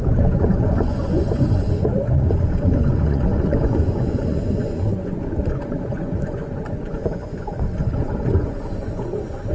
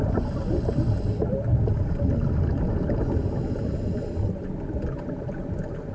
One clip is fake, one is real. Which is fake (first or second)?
first